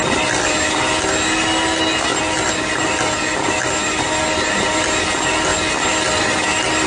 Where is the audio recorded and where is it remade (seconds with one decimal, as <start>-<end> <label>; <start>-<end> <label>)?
0.0-6.9 recorded